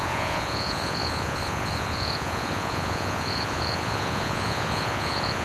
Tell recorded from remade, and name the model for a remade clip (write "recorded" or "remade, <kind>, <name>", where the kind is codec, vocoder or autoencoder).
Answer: remade, vocoder, Vocos